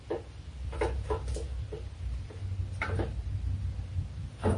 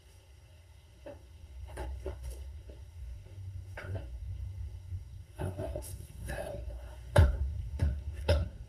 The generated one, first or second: second